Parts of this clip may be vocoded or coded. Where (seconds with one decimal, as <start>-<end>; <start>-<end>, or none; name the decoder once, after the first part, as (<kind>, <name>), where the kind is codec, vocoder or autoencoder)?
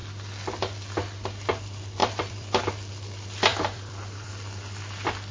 2.0-2.6 (vocoder, BigVGAN v2); 3.5-4.3